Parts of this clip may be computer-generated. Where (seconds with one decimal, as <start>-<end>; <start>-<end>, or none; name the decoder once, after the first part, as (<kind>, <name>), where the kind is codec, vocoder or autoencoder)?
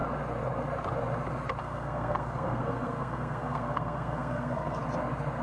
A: 1.6-4.8 (codec, SNAC)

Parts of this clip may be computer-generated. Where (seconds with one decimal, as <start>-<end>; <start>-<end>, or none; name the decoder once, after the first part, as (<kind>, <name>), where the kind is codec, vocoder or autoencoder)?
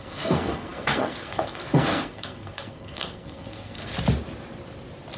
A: 0.0-3.9 (codec, SNAC)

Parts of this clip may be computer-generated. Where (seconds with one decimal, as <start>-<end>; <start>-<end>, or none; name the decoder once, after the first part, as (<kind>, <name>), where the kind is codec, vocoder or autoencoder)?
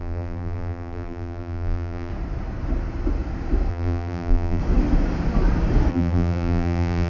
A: 0.0-2.1 (vocoder, BigVGAN v2); 3.7-4.6; 5.9-7.1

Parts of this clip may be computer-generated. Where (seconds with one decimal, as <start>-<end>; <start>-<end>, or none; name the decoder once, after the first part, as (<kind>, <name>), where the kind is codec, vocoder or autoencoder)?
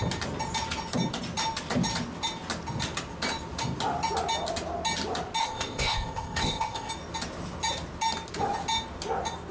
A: 5.4-6.9 (codec, ZipCodec)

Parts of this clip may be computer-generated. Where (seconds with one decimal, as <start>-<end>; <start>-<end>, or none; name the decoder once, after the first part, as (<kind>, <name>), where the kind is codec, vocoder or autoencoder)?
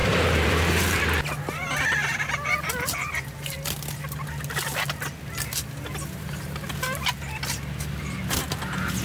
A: 0.0-1.0 (vocoder, BigVGAN v2)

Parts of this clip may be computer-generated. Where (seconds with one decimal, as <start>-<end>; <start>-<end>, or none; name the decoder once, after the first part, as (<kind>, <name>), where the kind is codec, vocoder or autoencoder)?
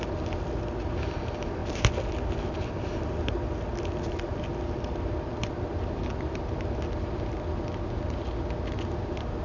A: none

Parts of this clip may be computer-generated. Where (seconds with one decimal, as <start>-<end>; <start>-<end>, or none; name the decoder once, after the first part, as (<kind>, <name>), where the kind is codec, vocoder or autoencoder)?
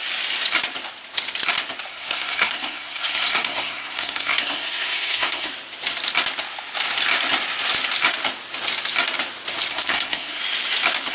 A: 1.9-5.5 (codec, SNAC); 9.7-10.4